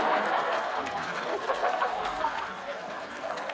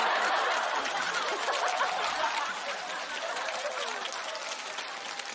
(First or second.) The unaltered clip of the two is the second